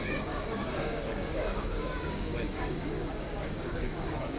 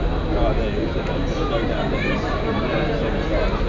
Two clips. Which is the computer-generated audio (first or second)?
first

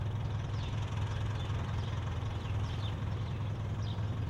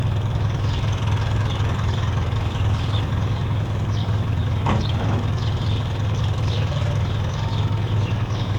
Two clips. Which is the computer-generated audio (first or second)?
second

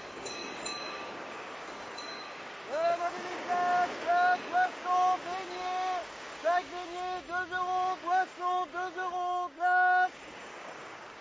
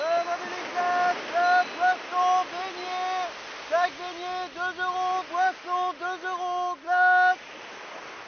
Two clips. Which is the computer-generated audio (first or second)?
first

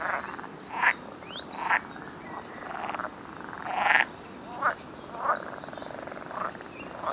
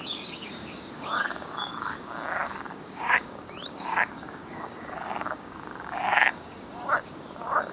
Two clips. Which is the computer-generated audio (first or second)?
second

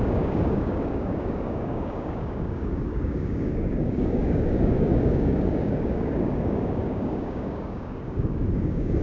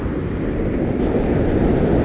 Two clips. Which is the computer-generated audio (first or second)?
first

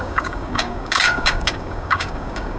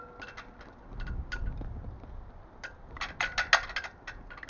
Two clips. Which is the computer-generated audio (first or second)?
first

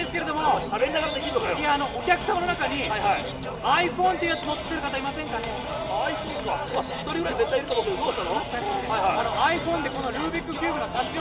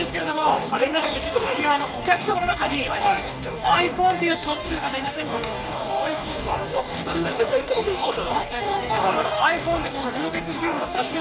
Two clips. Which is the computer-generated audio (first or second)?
second